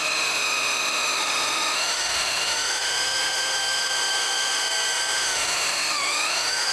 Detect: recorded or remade remade